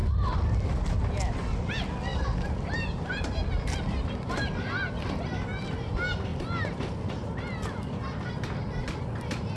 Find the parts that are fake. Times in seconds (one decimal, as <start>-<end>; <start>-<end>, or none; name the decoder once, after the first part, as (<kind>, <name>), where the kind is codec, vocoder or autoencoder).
2.1-4.3 (vocoder, BigVGAN v2); 6.3-8.0